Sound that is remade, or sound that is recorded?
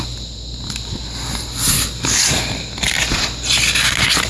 recorded